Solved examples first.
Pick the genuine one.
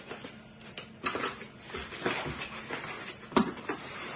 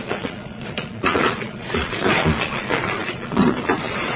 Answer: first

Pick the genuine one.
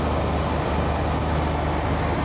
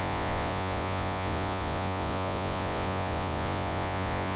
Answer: first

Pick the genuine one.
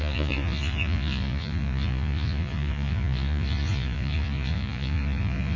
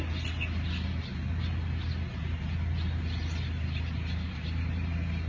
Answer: second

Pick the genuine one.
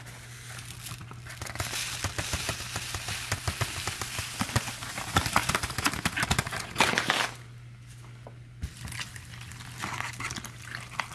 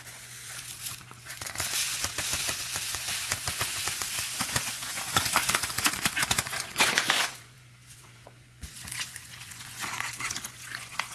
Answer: first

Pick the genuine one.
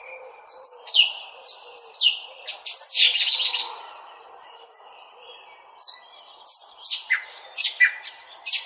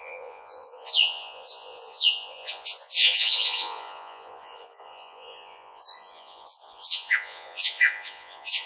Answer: first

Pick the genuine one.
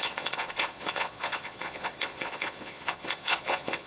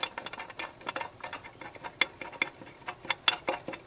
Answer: second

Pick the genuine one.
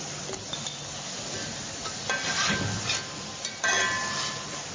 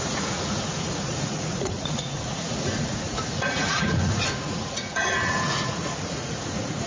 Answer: first